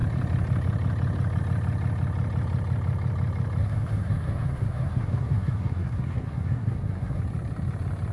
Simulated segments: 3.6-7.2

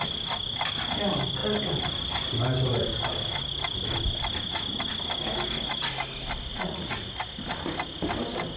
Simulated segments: 6.5-7.2

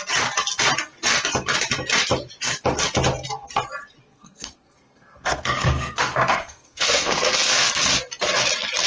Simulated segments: 4.1-7.7

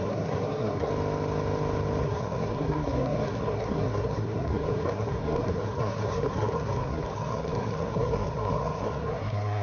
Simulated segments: 0.0-0.9; 2.0-9.6

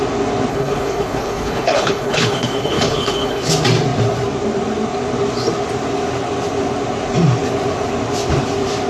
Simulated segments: 0.5-3.5

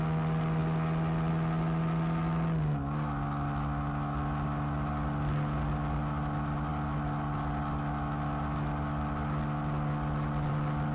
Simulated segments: none

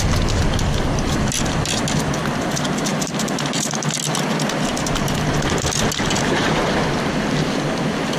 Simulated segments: none